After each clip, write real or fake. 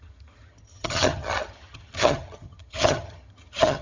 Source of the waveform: fake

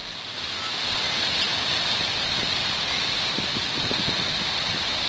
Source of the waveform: real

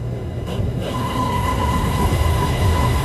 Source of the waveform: fake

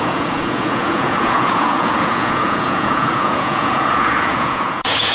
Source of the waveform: fake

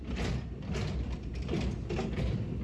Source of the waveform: real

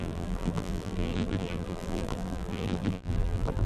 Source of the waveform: fake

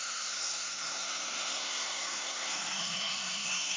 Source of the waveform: fake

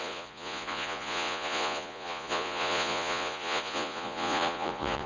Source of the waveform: fake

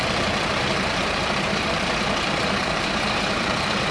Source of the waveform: fake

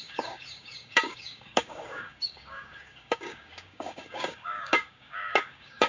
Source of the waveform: fake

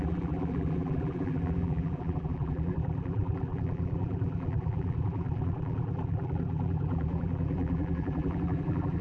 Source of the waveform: fake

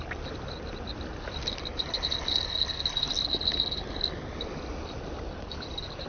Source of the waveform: real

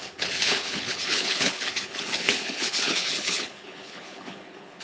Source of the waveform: fake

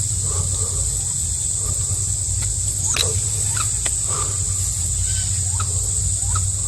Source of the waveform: real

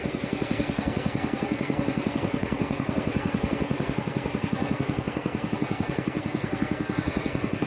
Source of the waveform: fake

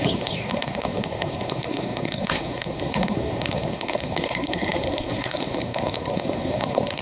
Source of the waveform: fake